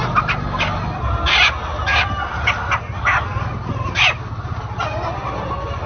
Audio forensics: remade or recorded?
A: recorded